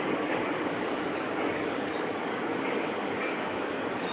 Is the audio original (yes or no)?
no